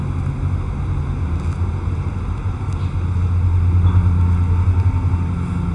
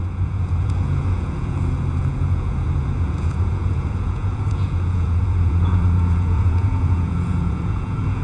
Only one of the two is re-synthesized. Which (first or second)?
second